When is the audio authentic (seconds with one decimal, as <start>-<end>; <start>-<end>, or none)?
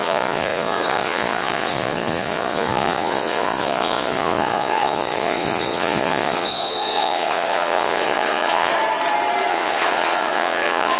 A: 8.7-9.5